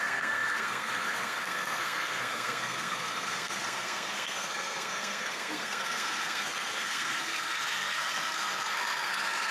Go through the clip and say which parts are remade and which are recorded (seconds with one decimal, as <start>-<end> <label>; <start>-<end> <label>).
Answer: 0.0-9.5 remade